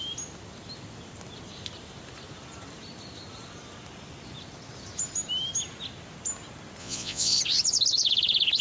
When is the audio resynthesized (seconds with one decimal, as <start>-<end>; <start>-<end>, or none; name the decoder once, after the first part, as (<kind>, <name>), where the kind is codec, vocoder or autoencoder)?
6.8-7.4 (vocoder, Vocos)